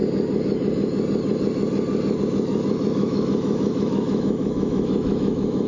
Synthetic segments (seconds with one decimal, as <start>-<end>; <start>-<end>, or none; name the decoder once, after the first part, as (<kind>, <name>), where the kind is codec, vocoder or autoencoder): 3.0-5.7 (autoencoder, DAC-VAE)

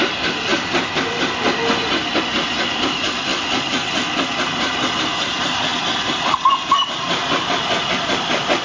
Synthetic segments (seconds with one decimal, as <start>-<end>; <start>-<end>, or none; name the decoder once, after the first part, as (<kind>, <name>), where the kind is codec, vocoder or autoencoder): 0.0-0.5 (vocoder, BigVGAN v2); 2.2-3.3; 4.9-5.7; 6.7-7.2; 7.9-8.6